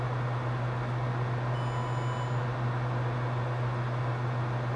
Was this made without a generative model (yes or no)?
yes